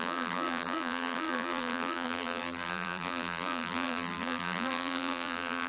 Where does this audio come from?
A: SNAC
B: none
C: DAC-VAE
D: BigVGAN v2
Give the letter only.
D